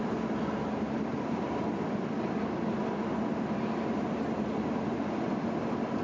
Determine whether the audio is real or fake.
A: real